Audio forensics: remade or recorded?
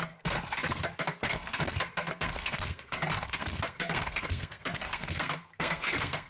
remade